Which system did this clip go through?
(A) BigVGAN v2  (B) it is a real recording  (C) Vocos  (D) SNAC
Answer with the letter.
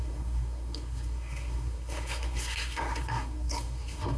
D